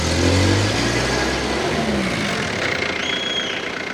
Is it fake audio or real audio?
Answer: real